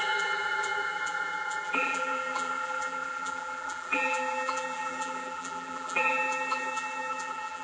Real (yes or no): no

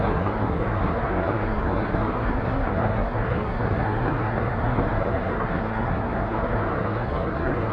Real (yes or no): no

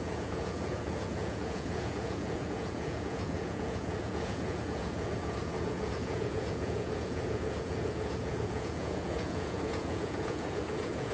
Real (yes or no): no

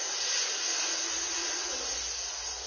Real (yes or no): yes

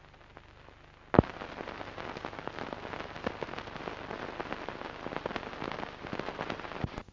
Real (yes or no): yes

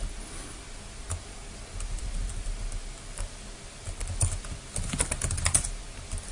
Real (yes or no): yes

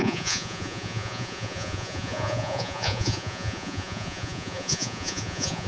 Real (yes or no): no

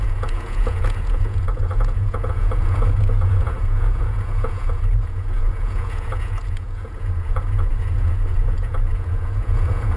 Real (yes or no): no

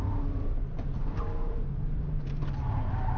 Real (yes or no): no